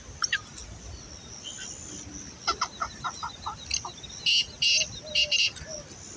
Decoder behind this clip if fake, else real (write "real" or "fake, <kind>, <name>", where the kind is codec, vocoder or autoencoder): real